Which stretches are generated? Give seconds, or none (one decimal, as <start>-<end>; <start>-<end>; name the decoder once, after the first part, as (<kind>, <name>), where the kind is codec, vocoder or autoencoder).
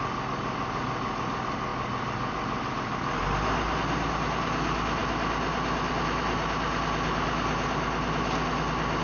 none